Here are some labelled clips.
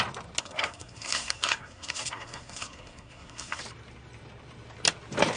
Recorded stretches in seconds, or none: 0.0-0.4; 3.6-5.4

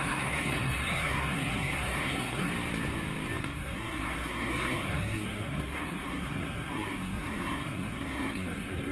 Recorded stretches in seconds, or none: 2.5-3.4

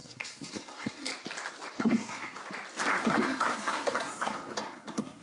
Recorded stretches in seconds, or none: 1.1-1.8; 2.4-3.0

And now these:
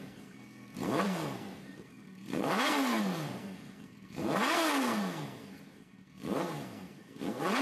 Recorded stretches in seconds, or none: none

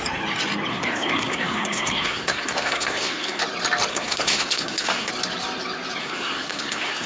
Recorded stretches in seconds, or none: 0.0-0.7; 3.4-3.9; 5.1-6.0